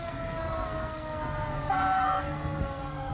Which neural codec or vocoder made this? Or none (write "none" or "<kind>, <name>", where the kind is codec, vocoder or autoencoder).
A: codec, SNAC